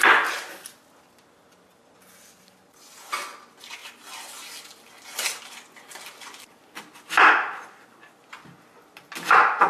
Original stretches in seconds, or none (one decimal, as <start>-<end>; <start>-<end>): 0.0-9.7